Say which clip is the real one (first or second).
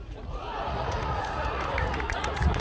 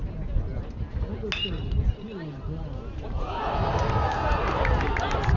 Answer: second